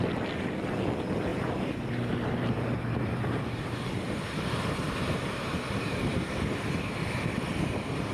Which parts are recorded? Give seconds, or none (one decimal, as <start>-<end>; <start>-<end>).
0.0-1.3; 6.2-8.1